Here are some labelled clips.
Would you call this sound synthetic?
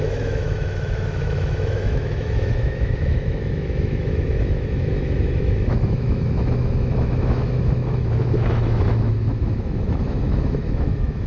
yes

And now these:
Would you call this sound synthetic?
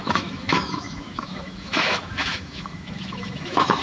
yes